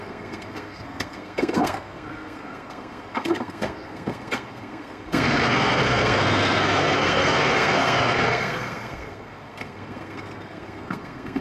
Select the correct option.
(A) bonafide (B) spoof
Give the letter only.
B